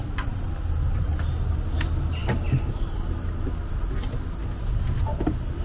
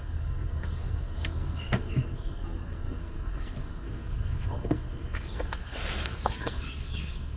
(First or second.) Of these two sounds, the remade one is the second